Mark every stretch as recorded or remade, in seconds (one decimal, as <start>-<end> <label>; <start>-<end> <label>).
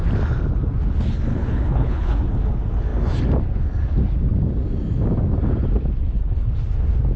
0.0-1.3 recorded; 1.3-2.2 remade; 2.2-6.0 recorded; 6.0-6.5 remade; 6.5-7.2 recorded